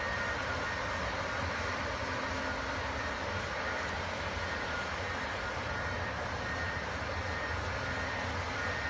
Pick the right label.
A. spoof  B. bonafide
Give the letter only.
B